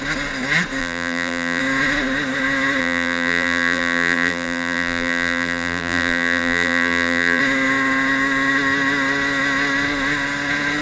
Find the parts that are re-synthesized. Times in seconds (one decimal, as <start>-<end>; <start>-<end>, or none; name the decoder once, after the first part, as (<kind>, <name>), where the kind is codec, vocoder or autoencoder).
0.8-1.6 (vocoder, BigVGAN v2); 2.8-7.4